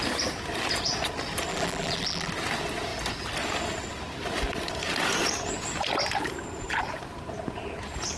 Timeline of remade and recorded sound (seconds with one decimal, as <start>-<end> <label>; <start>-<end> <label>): 0.0-1.5 recorded; 1.5-2.3 remade; 2.3-8.2 recorded